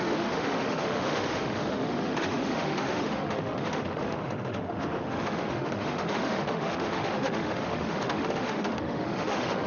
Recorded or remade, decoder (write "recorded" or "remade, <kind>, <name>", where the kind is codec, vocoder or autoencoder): remade, autoencoder, DAC-VAE